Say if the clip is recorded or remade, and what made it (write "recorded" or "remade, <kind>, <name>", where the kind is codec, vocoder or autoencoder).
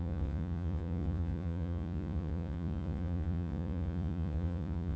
remade, vocoder, Vocos